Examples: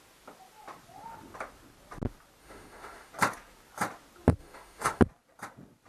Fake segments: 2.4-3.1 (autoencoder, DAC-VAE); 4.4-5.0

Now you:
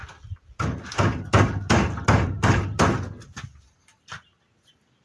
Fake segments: 0.0-3.0 (vocoder, BigVGAN v2)